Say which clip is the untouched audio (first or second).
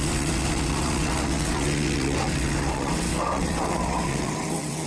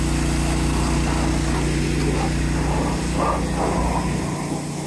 second